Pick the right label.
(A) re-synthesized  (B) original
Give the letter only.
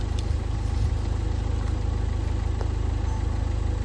B